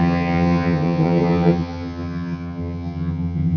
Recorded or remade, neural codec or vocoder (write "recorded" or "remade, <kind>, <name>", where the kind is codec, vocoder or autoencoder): remade, vocoder, HiFi-GAN